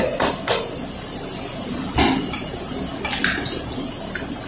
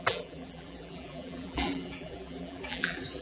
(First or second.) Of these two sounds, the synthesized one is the second